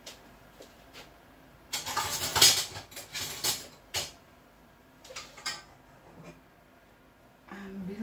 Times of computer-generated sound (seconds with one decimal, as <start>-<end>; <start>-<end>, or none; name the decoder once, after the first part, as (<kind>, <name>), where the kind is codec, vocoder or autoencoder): 0.0-2.3 (vocoder, BigVGAN v2); 3.5-5.5